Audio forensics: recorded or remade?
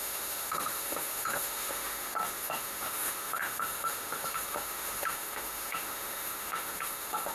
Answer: remade